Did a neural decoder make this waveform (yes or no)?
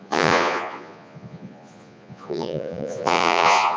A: yes